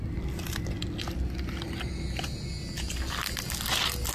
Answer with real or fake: real